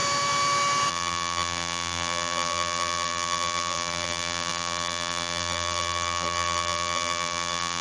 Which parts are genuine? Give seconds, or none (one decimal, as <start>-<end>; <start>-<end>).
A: 0.0-0.9